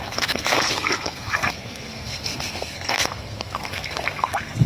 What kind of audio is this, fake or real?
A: fake